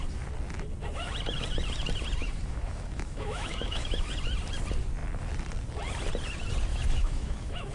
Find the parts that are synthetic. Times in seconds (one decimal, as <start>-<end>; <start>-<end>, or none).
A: 2.2-4.1; 6.7-7.7